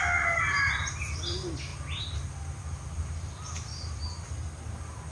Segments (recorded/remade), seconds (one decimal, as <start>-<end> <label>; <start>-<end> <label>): 0.0-5.1 recorded

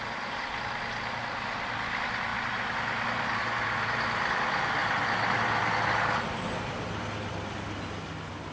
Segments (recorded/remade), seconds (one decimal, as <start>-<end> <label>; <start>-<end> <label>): 0.0-8.5 recorded

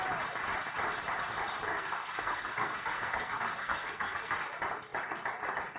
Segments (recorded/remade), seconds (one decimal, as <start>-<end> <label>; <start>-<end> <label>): 0.0-1.7 recorded; 1.7-4.4 remade; 4.4-5.8 recorded

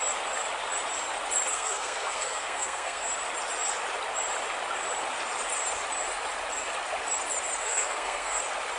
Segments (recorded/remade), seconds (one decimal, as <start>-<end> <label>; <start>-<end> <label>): 0.0-1.5 recorded; 1.5-3.1 remade; 3.1-7.6 recorded; 7.6-8.4 remade; 8.4-8.8 recorded